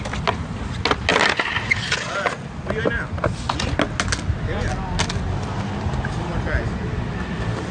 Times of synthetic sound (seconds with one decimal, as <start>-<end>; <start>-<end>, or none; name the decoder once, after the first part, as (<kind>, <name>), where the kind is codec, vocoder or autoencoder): none